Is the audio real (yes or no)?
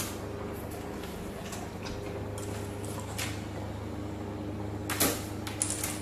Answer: yes